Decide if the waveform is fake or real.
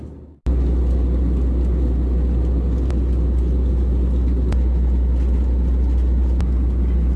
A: real